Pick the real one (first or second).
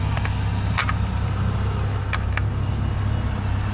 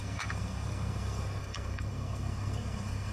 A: first